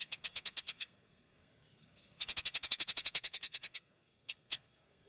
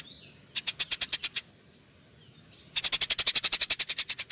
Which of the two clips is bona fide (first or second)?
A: second